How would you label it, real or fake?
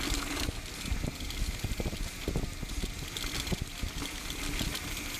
real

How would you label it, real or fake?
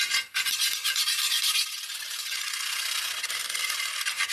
fake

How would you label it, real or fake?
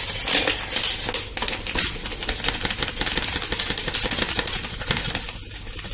real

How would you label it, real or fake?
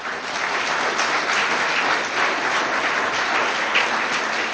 real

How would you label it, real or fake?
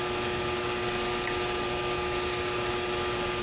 real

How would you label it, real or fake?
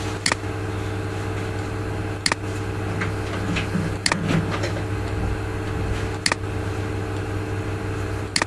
real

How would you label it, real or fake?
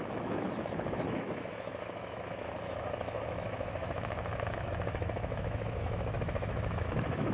fake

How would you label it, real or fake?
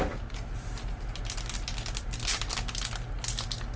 real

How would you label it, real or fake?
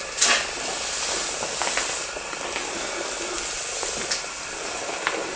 real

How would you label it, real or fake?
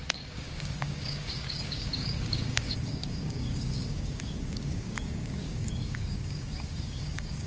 fake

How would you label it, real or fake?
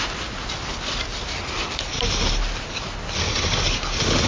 real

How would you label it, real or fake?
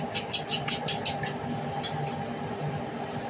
real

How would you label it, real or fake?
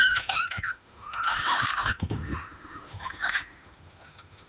fake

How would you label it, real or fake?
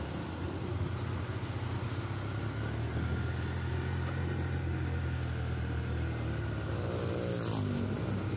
real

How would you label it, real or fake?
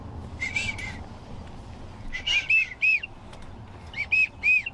real